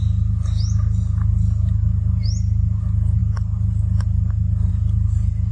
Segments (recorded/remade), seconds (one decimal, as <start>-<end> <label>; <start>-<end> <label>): 0.0-5.5 recorded